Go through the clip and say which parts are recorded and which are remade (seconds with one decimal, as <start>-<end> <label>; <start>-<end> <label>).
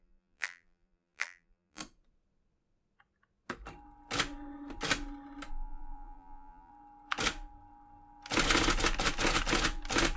0.0-1.8 remade; 1.8-5.5 recorded; 5.5-6.7 remade; 6.7-10.2 recorded